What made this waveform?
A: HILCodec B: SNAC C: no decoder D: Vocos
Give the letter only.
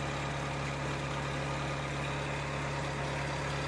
C